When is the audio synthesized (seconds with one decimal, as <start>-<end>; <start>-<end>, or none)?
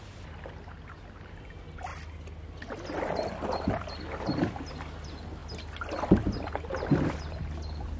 none